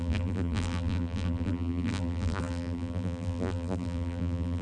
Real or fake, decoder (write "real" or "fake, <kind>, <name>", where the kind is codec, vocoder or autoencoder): fake, vocoder, BigVGAN v2